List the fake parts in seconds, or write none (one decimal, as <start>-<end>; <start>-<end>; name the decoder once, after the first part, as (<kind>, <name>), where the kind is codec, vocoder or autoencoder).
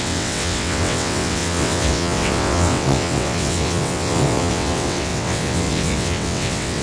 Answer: 0.0-6.8 (vocoder, WaveNeXt)